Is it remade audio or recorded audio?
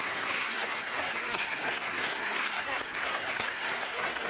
remade